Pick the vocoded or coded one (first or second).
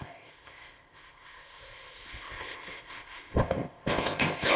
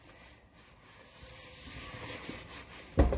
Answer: first